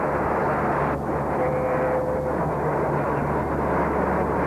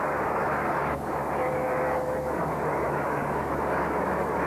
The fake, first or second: second